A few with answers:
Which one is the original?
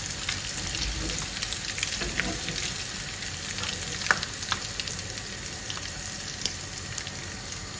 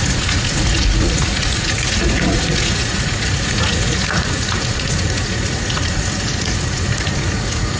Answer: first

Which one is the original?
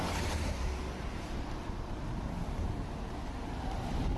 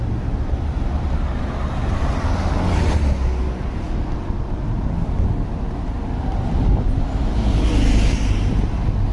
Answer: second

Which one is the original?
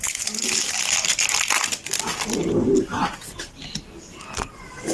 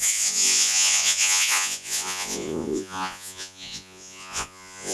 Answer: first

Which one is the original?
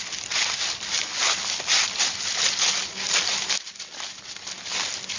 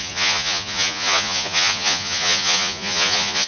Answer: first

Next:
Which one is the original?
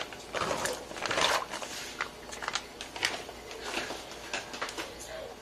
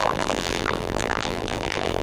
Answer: first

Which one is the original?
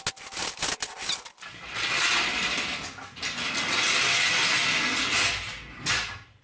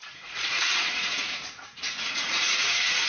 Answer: first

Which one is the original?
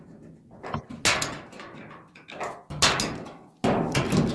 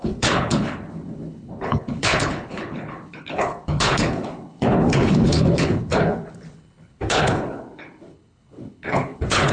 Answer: first